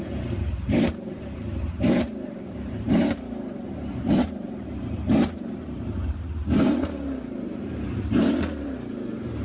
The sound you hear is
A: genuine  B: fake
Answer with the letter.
B